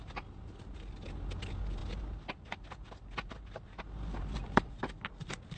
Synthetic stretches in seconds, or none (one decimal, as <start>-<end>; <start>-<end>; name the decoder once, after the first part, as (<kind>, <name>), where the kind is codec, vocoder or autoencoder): none